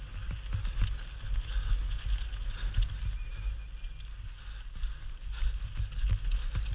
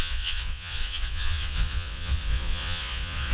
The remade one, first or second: second